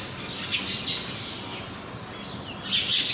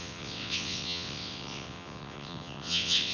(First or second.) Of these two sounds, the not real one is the second